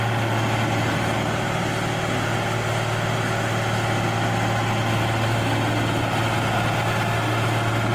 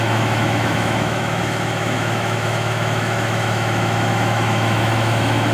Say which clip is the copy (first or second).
second